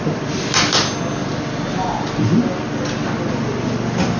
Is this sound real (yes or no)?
yes